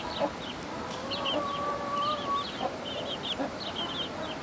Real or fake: real